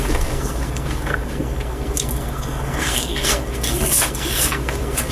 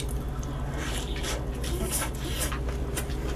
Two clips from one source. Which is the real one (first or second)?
second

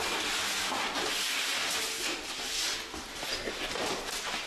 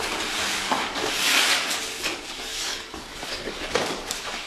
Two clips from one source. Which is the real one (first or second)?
first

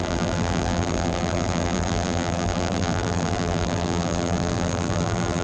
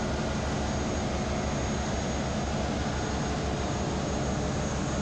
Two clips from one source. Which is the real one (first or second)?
second